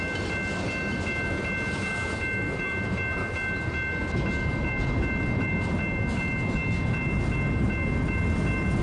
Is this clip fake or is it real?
real